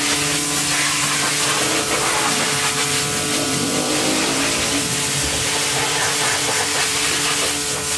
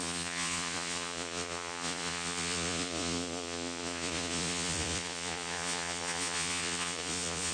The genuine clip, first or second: first